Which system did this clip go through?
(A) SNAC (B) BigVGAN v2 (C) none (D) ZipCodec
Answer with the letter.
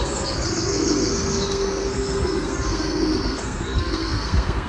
A